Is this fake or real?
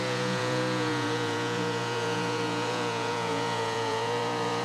fake